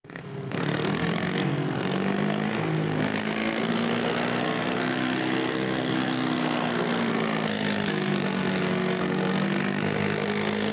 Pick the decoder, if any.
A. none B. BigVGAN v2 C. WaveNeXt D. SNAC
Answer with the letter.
D